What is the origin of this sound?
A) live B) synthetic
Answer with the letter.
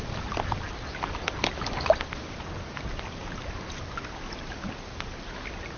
A